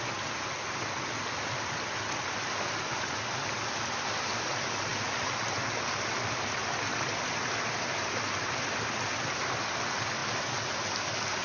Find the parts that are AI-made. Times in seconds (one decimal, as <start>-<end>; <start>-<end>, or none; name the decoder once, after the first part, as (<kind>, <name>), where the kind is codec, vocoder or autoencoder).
none